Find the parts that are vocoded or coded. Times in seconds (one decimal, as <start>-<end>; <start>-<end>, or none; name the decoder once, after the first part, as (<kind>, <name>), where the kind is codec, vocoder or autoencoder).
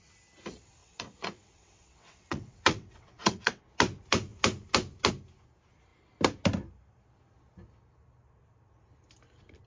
0.8-3.6 (vocoder, WaveNeXt)